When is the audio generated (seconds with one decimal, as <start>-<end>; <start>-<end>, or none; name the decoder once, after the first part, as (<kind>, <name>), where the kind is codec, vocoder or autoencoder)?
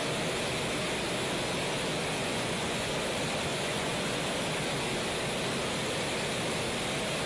2.2-2.9 (vocoder, Vocos); 3.5-4.2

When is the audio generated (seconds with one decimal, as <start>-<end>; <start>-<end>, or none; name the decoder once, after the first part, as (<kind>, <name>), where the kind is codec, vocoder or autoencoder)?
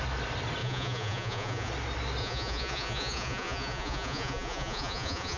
0.6-1.7 (vocoder, Vocos); 2.2-5.4